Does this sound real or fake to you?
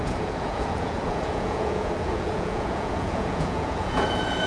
fake